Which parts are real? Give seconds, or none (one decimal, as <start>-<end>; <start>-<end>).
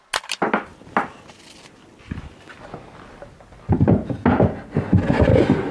0.0-5.7